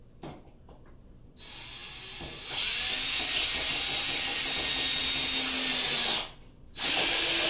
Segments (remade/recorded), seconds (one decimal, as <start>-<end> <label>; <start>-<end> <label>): 0.0-7.5 recorded